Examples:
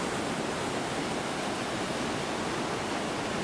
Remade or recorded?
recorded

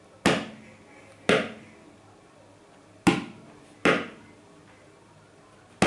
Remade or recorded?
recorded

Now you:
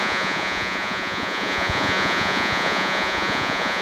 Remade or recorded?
remade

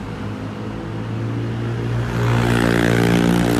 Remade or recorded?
recorded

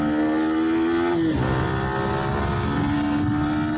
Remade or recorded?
recorded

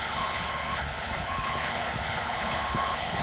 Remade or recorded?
remade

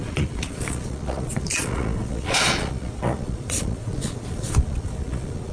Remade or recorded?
remade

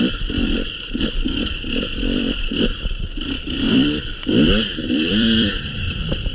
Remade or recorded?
remade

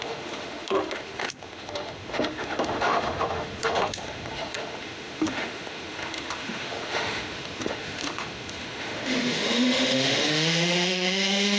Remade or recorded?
remade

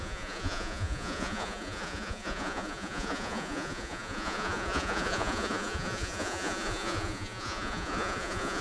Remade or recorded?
remade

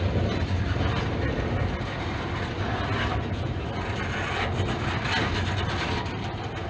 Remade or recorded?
recorded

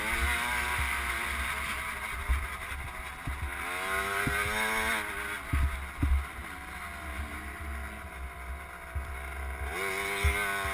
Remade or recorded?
recorded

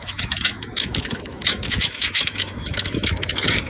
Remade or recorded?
remade